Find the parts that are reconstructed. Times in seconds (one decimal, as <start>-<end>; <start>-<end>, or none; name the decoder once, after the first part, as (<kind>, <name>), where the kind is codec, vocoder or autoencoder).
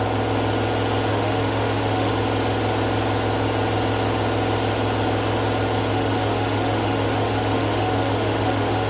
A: 1.1-2.1 (autoencoder, DAC-VAE); 5.9-8.9